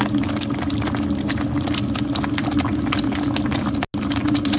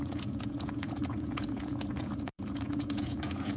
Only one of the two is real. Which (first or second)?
first